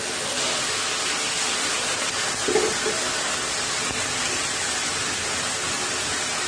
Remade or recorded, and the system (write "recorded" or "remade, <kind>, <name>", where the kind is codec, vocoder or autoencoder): recorded